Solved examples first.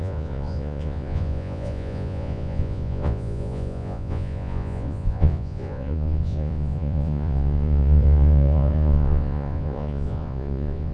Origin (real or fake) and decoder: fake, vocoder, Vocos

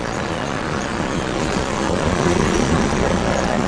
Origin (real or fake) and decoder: fake, vocoder, Vocos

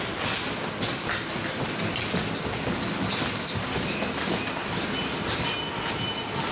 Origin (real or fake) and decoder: real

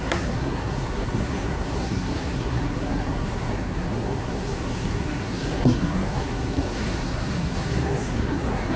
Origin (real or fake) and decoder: fake, codec, SNAC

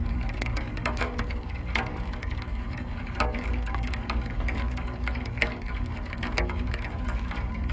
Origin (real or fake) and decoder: fake, codec, DAC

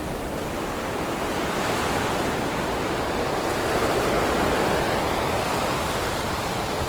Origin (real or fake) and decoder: fake, vocoder, BigVGAN v2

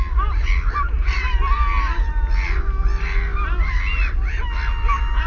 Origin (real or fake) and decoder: real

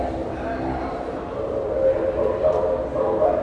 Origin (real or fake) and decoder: real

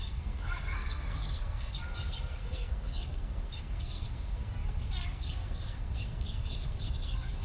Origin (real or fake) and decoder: fake, codec, SNAC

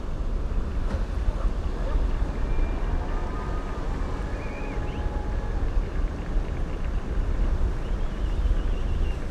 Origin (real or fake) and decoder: real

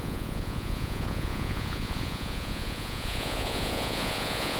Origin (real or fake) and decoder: fake, vocoder, Vocos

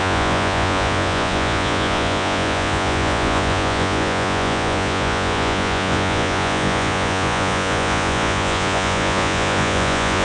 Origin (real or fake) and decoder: fake, vocoder, Vocos